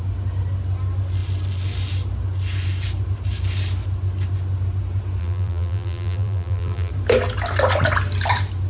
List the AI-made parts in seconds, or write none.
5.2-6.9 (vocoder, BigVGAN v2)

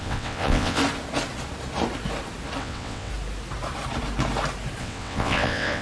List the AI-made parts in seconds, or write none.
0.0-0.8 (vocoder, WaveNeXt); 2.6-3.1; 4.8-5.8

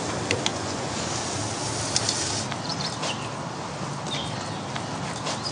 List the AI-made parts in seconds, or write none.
0.5-1.1 (vocoder, Vocos)

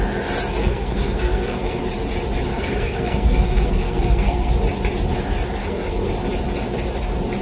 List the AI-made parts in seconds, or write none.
0.6-1.8 (codec, SNAC); 2.5-4.5; 5.6-6.1

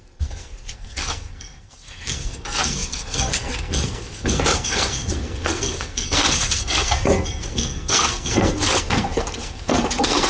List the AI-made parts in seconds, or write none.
0.0-10.3 (codec, SNAC)